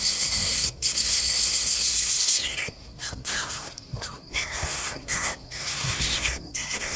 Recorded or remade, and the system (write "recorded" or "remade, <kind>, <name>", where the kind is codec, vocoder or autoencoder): remade, codec, SNAC